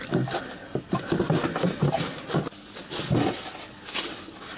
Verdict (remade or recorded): recorded